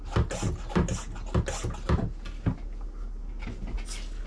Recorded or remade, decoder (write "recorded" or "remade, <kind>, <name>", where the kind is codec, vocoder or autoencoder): recorded